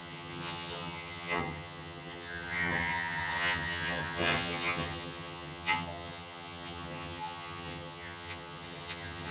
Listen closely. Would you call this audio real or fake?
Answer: fake